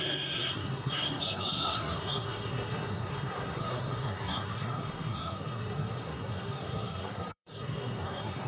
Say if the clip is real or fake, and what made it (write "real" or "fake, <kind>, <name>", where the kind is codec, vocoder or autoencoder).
fake, codec, SNAC